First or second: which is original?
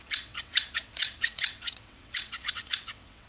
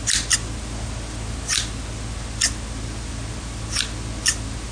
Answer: second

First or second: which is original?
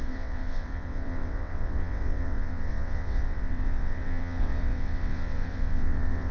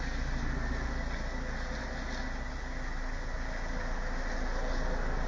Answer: second